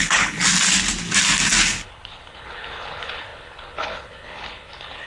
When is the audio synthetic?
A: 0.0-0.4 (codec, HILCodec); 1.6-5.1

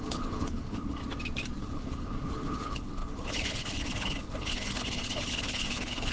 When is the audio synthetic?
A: 0.0-1.0 (codec, HILCodec); 1.6-6.1

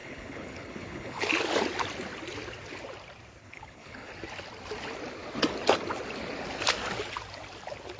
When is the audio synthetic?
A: 0.0-1.3 (codec, HILCodec); 3.4-4.1